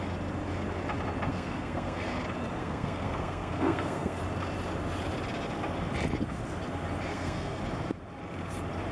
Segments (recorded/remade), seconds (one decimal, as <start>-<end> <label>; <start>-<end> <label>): 0.0-1.3 recorded; 1.3-2.1 remade; 2.1-2.6 recorded; 2.6-4.2 remade; 4.2-7.1 recorded; 7.1-7.6 remade; 7.6-8.9 recorded